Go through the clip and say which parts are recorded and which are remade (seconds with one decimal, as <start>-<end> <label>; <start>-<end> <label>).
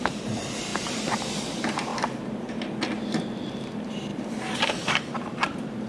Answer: 0.0-1.9 remade; 1.9-2.5 recorded; 2.5-5.9 remade